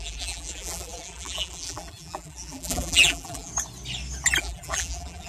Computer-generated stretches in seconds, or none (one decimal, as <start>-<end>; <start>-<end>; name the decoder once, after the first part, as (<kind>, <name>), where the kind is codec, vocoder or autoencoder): 0.0-3.5 (vocoder, BigVGAN v2); 4.4-5.3